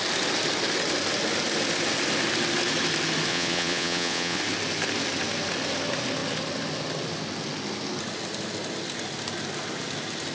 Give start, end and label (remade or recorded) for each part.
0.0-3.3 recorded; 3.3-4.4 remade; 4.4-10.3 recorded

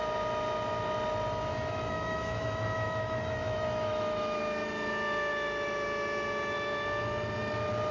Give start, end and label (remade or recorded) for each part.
0.0-1.5 recorded; 1.5-4.4 remade; 4.4-7.9 recorded